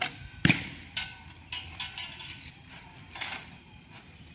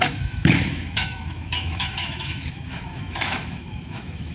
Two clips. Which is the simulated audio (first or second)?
second